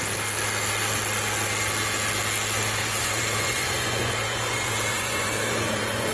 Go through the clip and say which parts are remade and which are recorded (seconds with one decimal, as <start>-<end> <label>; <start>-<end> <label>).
0.0-2.8 recorded; 2.8-6.1 remade